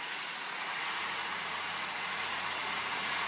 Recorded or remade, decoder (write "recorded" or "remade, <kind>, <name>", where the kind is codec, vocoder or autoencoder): remade, vocoder, Vocos